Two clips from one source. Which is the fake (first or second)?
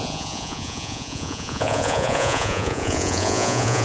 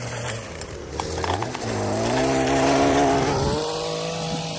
first